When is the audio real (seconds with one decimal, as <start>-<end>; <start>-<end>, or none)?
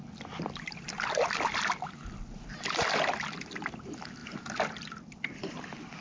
0.0-6.0